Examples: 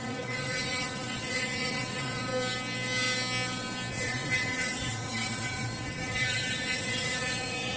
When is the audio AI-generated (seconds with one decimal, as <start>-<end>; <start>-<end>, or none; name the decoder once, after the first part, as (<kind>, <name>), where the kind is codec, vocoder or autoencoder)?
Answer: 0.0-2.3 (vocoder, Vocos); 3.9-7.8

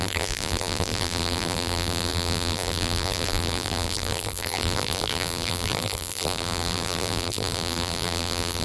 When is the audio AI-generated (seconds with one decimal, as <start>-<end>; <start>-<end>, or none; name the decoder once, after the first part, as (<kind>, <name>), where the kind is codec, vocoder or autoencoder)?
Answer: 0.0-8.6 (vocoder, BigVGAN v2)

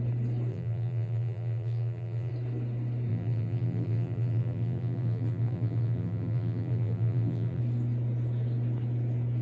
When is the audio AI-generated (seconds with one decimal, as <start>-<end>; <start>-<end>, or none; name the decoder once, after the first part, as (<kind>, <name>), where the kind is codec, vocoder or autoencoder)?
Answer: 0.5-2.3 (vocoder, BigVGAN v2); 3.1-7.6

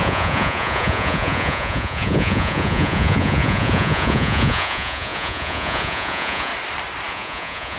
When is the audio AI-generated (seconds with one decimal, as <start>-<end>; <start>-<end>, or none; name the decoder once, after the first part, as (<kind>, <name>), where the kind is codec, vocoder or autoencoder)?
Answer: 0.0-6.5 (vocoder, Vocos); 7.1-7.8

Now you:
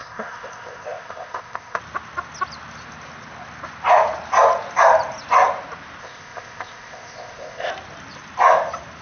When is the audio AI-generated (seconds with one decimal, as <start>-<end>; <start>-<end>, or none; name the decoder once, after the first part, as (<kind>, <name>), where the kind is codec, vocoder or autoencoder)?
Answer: 0.0-1.8 (codec, ZipCodec); 6.0-7.7

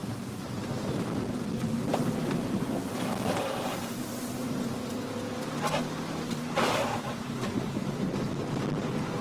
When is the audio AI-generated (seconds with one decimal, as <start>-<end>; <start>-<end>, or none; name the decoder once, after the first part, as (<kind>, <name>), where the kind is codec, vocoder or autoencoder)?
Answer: 0.0-1.3 (vocoder, BigVGAN v2); 1.9-6.9

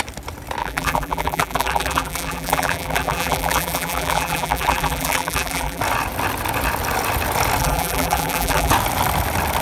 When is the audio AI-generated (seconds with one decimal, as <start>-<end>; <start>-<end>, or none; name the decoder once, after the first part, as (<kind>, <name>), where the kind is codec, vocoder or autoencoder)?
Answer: 0.6-5.8 (vocoder, BigVGAN v2); 7.6-8.7